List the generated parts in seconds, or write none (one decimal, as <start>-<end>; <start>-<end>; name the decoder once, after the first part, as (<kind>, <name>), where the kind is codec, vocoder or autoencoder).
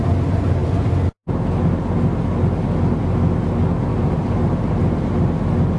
3.9-5.1 (vocoder, BigVGAN v2)